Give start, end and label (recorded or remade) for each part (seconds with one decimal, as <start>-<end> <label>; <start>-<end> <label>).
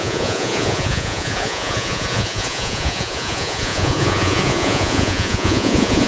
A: 0.0-6.1 remade